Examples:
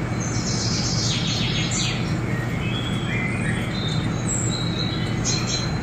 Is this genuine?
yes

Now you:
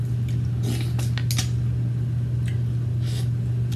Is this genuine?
yes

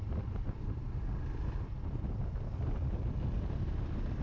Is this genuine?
yes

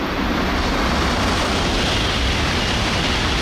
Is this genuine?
yes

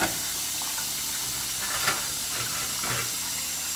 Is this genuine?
yes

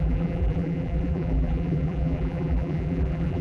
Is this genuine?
no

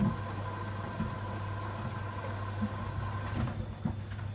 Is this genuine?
yes